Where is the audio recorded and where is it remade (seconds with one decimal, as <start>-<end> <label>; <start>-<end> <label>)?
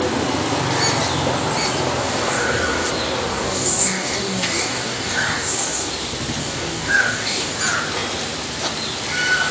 0.0-2.0 recorded; 2.0-2.9 remade; 2.9-3.3 recorded; 3.3-5.9 remade; 5.9-6.4 recorded; 6.4-7.5 remade; 7.5-9.5 recorded